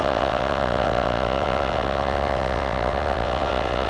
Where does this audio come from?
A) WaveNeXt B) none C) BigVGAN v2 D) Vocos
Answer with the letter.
A